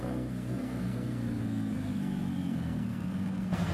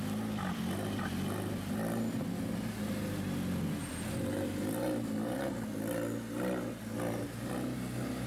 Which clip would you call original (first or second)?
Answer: second